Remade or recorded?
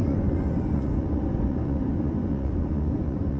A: remade